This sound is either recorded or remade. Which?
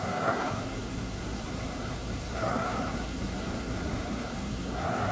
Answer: remade